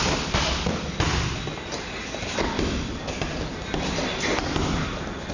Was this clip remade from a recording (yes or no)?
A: no